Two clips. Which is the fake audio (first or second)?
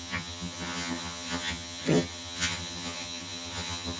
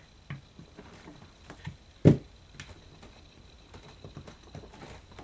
first